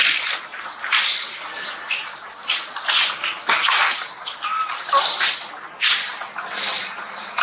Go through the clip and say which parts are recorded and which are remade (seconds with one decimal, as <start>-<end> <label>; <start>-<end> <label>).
0.0-7.4 recorded